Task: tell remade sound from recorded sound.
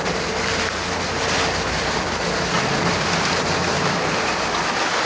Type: recorded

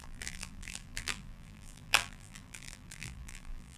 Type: remade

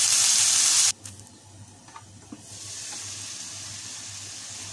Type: recorded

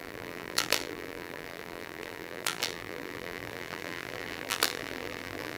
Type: remade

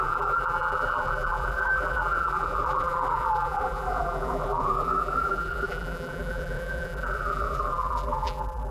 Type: remade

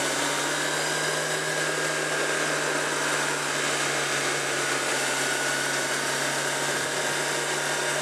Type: recorded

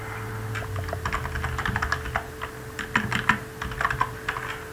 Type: recorded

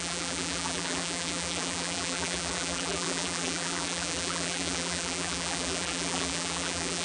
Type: remade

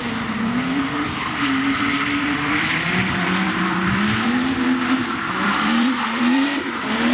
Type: remade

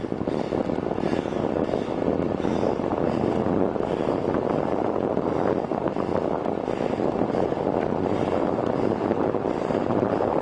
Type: recorded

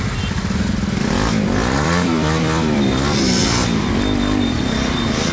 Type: remade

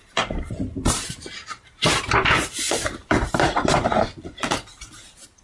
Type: remade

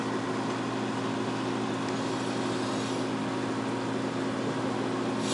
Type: recorded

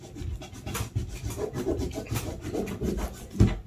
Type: recorded